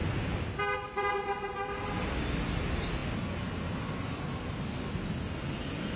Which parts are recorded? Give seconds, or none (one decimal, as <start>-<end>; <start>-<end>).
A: 0.0-6.0

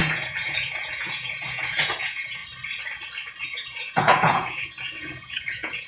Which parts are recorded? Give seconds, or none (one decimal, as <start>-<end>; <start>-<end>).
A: 2.4-3.4

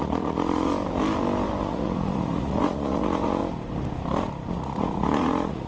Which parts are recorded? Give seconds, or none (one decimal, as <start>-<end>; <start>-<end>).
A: 0.7-1.6; 3.4-4.5

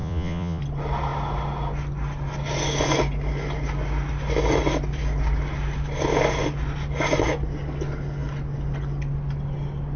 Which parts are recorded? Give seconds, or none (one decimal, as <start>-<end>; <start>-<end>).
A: 0.6-10.0

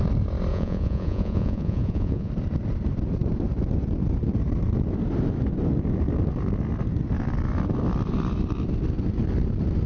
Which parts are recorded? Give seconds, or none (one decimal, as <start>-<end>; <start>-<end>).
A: 0.0-0.5; 2.3-9.9